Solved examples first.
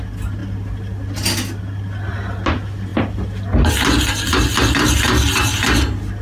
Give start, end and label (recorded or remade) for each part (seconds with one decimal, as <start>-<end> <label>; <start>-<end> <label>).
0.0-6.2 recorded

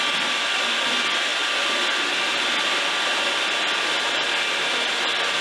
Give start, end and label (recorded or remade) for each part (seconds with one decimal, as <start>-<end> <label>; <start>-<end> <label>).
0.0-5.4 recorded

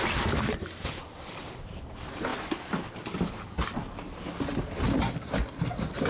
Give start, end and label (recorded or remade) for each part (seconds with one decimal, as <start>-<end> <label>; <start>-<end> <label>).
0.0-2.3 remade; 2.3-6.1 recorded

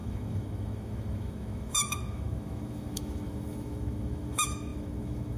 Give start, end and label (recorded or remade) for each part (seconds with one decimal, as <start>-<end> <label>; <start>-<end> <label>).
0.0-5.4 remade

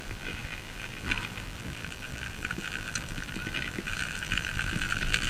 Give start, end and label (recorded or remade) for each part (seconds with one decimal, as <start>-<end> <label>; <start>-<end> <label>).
0.0-5.3 remade